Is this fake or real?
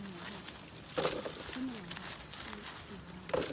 real